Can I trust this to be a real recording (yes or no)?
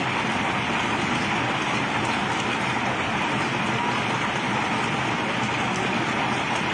yes